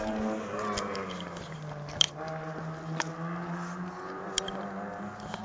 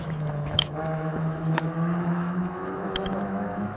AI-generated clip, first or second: second